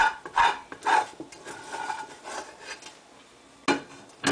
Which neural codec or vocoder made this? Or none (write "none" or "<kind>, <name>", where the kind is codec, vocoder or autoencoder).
none